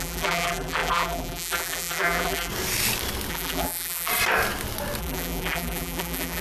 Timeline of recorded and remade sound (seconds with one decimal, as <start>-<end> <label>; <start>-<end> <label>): 0.0-2.5 remade; 2.5-3.3 recorded; 3.3-4.1 remade; 4.1-5.0 recorded; 5.0-6.4 remade